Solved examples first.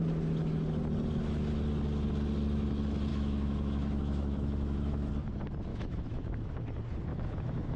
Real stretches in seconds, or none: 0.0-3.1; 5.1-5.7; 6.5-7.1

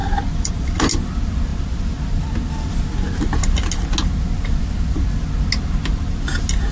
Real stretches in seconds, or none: 0.5-6.7

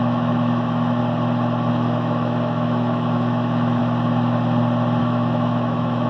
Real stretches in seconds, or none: 1.0-1.7; 3.8-5.0

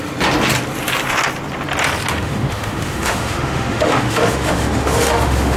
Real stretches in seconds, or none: 0.0-2.1

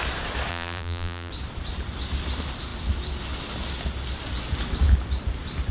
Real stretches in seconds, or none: 0.0-0.5; 1.3-5.7

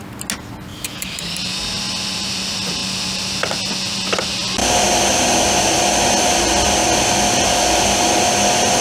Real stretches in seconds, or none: 0.0-0.7; 1.6-2.8; 3.7-8.8